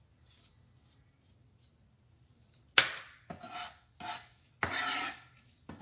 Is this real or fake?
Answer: real